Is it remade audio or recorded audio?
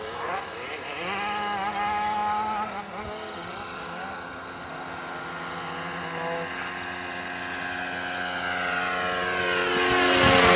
recorded